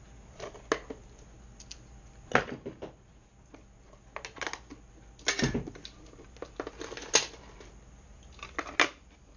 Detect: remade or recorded recorded